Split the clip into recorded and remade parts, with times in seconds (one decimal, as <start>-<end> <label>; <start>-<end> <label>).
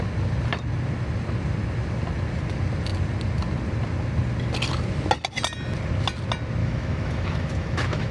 0.0-6.6 recorded; 6.6-8.1 remade